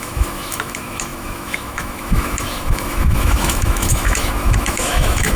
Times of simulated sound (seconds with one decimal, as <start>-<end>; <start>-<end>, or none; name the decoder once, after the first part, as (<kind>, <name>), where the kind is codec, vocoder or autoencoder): 0.0-5.4 (autoencoder, DAC-VAE)